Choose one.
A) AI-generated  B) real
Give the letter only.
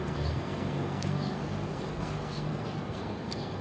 A